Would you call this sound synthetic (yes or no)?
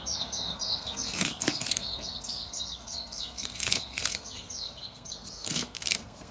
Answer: yes